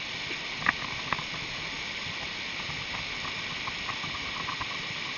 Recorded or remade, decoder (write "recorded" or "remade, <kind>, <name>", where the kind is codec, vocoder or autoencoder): recorded